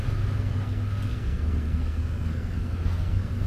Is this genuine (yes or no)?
no